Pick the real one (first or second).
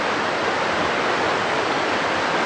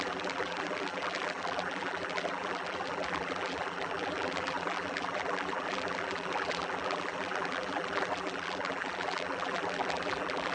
first